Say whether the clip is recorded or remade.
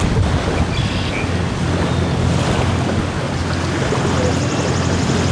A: recorded